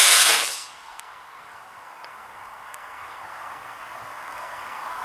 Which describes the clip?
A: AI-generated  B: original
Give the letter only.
A